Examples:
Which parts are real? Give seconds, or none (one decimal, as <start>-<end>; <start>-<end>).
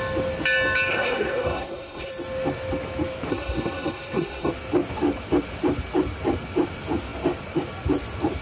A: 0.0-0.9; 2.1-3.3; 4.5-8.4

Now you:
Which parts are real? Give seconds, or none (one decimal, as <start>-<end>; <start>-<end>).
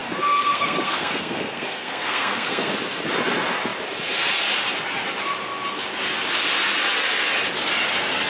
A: 2.7-8.3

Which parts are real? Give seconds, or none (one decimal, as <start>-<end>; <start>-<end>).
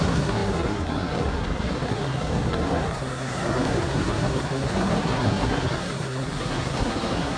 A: none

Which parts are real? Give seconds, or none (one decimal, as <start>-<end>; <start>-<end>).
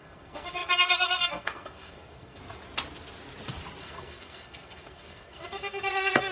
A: 2.4-3.8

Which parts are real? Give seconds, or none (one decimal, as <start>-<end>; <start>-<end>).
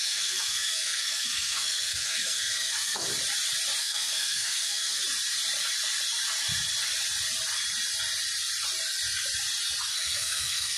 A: 3.1-3.8; 5.0-9.9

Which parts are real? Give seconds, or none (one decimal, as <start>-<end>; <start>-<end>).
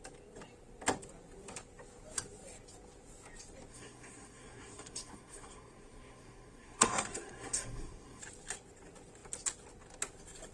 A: 0.0-3.7; 8.2-10.5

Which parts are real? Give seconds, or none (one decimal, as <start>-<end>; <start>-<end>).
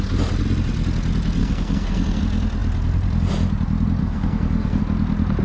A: 0.0-1.4; 2.2-4.0; 4.8-5.4